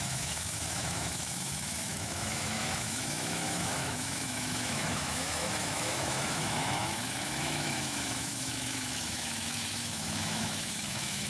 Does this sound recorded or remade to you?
remade